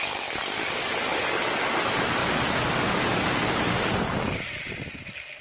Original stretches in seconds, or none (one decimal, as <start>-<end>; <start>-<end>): 0.0-5.4